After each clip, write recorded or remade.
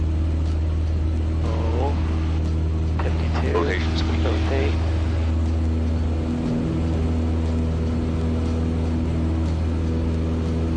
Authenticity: recorded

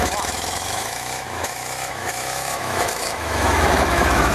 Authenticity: remade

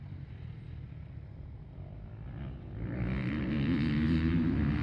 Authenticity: recorded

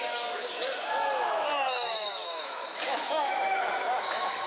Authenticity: remade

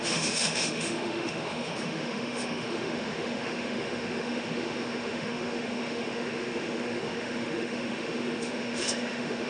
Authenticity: remade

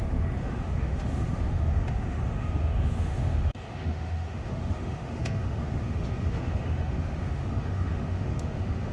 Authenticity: remade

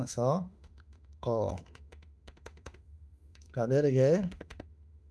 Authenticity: remade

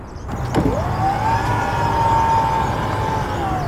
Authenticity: recorded